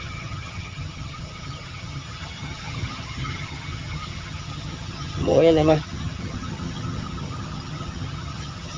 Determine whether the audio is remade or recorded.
remade